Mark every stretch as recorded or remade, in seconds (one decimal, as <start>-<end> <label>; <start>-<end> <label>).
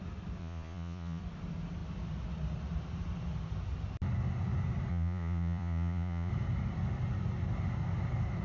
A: 0.0-0.4 recorded; 0.4-1.2 remade; 1.2-4.9 recorded; 4.9-6.3 remade; 6.3-8.4 recorded